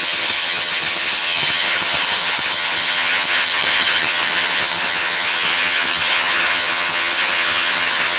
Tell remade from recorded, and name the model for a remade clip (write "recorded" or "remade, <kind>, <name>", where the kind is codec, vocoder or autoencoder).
remade, vocoder, HiFi-GAN